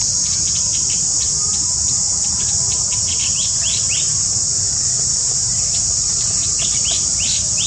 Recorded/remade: recorded